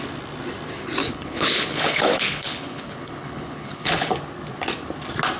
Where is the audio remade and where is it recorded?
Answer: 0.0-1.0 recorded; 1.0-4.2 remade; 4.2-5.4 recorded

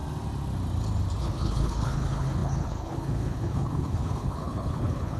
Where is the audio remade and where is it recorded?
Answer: 0.0-1.2 recorded; 1.2-5.2 remade

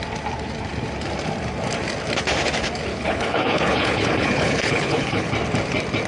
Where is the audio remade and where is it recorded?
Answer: 0.0-2.9 recorded; 2.9-5.3 remade; 5.3-6.1 recorded

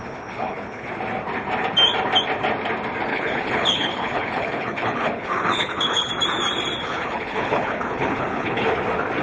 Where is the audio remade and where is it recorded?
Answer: 0.0-0.9 remade; 0.9-3.1 recorded; 3.1-6.1 remade; 6.1-6.8 recorded; 6.8-8.7 remade; 8.7-9.2 recorded

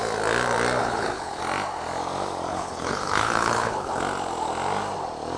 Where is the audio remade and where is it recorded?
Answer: 0.0-0.8 recorded; 0.8-1.4 remade; 1.4-2.5 recorded; 2.5-4.0 remade; 4.0-5.4 recorded